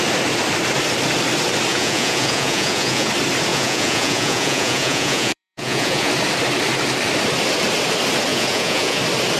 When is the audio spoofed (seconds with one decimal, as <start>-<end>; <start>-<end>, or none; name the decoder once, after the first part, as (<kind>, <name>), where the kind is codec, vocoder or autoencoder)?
1.7-3.1 (vocoder, Vocos); 3.5-6.1; 8.3-9.0